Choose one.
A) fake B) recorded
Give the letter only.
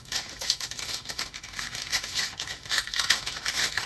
A